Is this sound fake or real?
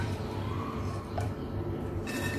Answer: fake